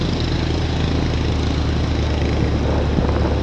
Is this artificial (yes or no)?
no